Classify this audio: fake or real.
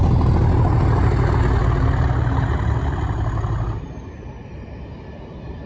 real